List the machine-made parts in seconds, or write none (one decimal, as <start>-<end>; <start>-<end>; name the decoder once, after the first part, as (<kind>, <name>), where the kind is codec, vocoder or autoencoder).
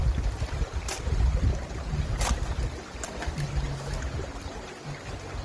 none